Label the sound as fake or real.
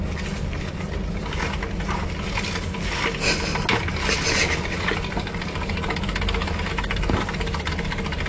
real